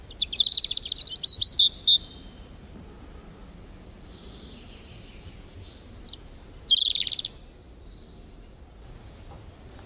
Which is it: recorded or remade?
recorded